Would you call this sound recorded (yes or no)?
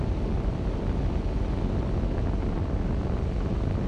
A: yes